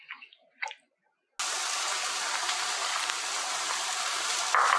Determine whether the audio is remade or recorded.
recorded